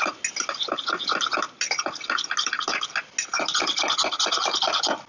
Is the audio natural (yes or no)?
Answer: yes